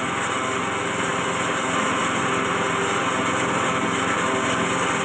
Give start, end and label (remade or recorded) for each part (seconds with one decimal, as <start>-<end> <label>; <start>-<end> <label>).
0.0-5.0 recorded